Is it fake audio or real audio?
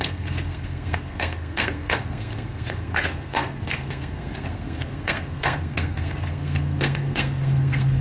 fake